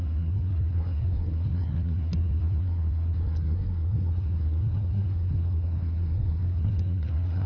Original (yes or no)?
no